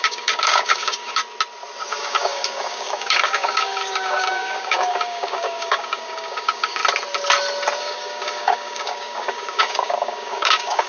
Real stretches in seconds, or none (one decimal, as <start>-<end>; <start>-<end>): 1.2-1.9; 6.8-7.8